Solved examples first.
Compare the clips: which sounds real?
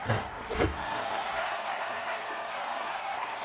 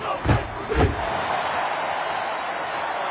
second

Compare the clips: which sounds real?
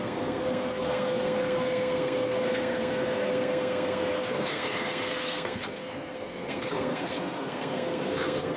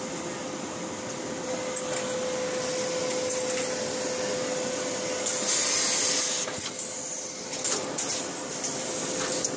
second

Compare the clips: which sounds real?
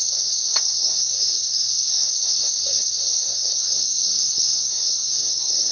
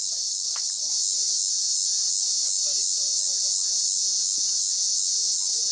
second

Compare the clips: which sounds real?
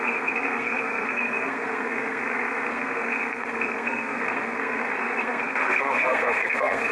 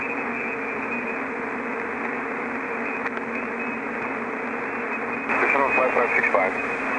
second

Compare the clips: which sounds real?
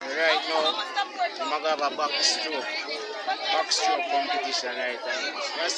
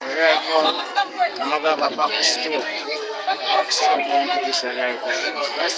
first